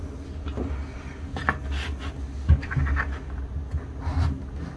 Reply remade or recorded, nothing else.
recorded